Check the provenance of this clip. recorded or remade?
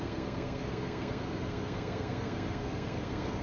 remade